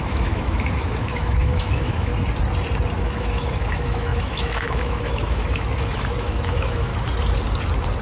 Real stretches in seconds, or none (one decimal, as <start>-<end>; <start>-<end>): 2.1-3.0; 6.9-8.0